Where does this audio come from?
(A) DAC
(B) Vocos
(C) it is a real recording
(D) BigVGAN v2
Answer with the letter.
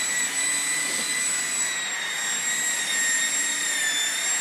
C